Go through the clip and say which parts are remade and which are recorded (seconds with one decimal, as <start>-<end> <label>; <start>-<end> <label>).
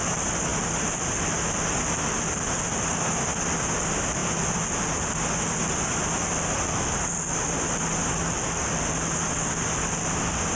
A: 0.0-10.6 recorded